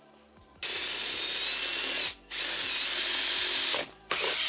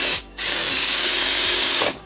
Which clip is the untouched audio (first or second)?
first